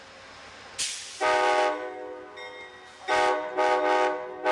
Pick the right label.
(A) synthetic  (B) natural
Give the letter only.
B